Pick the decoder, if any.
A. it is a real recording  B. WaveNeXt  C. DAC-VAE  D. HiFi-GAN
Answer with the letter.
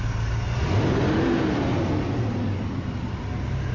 A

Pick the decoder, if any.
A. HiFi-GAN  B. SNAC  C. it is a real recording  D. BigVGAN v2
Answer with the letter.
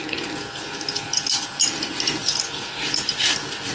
C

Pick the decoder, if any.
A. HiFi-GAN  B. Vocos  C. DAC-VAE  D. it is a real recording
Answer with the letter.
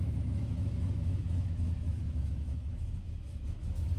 C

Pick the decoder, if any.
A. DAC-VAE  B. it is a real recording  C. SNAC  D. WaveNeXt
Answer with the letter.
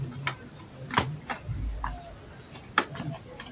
B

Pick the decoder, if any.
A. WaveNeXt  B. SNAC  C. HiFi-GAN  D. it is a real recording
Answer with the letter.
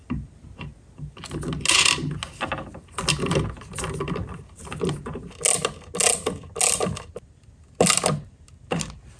D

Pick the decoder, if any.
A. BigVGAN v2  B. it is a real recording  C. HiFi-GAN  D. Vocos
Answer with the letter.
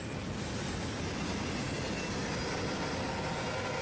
B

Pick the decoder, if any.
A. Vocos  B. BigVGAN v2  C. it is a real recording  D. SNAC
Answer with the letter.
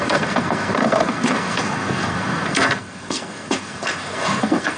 D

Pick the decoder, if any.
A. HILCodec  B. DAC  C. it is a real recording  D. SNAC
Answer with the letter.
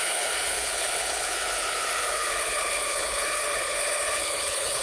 A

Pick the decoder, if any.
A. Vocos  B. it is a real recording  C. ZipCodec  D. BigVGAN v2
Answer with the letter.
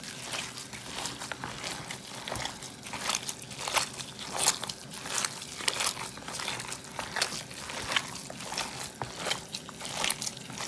B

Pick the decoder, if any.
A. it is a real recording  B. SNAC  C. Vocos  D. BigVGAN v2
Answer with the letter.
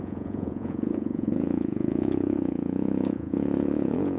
C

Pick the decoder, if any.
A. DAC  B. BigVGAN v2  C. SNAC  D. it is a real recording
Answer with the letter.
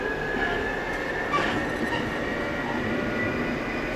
D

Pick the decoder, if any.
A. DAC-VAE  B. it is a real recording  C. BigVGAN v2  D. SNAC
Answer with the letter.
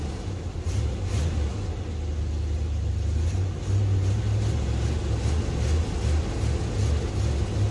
B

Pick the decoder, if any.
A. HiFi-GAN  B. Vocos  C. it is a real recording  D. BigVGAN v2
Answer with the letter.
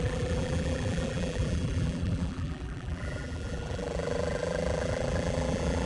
D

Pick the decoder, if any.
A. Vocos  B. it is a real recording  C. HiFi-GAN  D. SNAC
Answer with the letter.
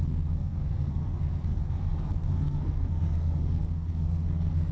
D